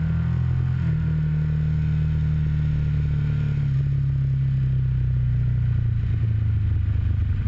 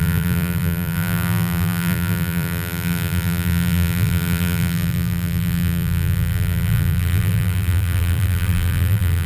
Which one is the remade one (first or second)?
second